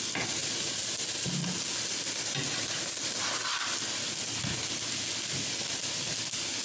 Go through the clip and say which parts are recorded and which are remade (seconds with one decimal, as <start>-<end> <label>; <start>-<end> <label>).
0.0-6.6 recorded